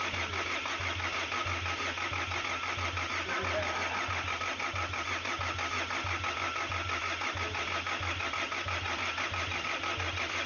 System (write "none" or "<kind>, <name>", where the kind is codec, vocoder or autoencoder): none